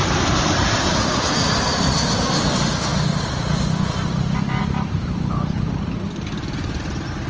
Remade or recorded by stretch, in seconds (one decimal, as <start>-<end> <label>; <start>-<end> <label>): 0.0-2.9 remade; 2.9-4.6 recorded; 4.6-7.3 remade

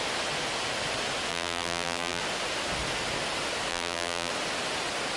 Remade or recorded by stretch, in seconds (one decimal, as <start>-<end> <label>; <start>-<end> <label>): 0.0-1.3 recorded; 1.3-2.2 remade; 2.2-3.7 recorded; 3.7-4.3 remade; 4.3-5.2 recorded

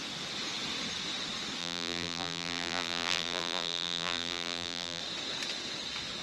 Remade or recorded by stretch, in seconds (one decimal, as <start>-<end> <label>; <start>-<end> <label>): 0.0-1.6 recorded; 1.6-5.0 remade; 5.0-6.2 recorded

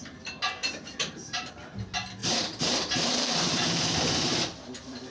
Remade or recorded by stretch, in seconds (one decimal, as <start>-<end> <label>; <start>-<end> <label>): 0.0-0.6 recorded; 0.6-1.5 remade; 1.5-2.2 recorded; 2.2-3.8 remade; 3.8-5.1 recorded